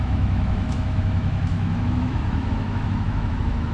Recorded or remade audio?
remade